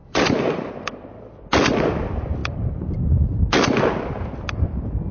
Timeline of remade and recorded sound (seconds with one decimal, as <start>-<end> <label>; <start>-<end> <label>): 0.0-0.7 remade; 0.7-2.4 recorded; 2.4-3.0 remade; 3.0-5.1 recorded